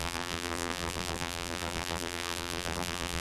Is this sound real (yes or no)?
no